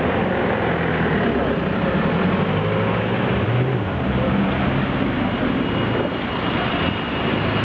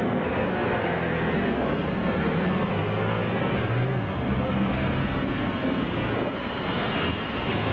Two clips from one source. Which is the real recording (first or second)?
first